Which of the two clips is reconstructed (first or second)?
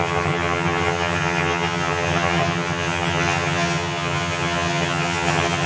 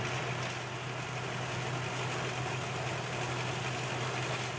first